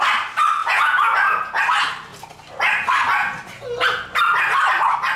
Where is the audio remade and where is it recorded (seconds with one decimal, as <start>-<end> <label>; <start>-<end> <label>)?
0.0-0.6 recorded; 0.6-1.6 remade; 1.6-5.2 recorded

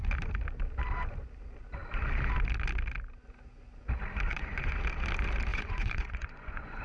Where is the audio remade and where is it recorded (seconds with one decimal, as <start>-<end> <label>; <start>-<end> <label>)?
0.0-4.3 recorded; 4.3-4.8 remade; 4.8-5.5 recorded; 5.5-6.8 remade

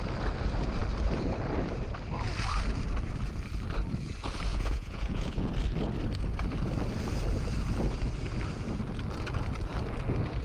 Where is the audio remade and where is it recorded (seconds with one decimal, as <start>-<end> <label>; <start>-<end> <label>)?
0.0-4.5 recorded; 4.5-5.5 remade; 5.5-10.4 recorded

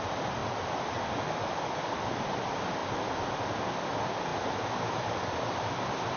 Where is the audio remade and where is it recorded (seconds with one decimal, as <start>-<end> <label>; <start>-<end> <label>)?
0.0-6.2 recorded

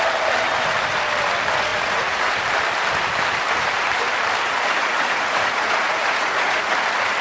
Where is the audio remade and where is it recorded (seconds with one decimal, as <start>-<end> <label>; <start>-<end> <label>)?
0.0-1.7 recorded; 1.7-2.3 remade; 2.3-4.8 recorded; 4.8-6.7 remade; 6.7-7.2 recorded

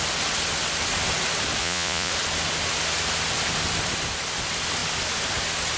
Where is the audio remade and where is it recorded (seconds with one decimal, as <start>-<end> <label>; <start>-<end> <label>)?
0.0-1.6 recorded; 1.6-2.1 remade; 2.1-5.8 recorded